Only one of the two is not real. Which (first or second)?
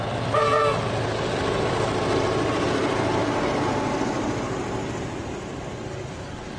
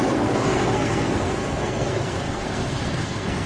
second